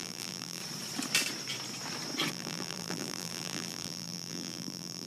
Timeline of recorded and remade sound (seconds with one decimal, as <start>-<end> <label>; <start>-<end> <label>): 0.0-0.6 remade; 0.6-2.3 recorded; 2.3-5.1 remade